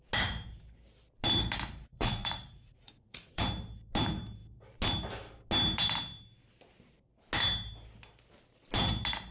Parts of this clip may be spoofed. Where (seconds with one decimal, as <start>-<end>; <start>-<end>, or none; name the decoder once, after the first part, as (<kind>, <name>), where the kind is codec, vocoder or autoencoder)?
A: 1.9-3.4 (vocoder, Vocos)